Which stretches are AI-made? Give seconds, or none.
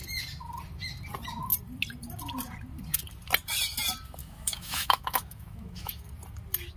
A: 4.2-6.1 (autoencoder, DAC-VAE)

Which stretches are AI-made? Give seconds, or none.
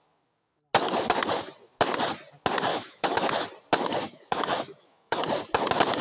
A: 2.7-3.3 (autoencoder, DAC-VAE); 4.0-5.2